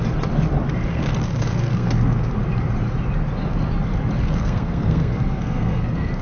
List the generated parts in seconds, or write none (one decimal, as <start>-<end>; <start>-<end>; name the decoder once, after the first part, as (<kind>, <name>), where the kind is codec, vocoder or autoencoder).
0.9-2.4 (codec, SNAC); 4.2-6.2